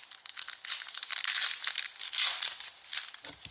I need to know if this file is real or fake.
real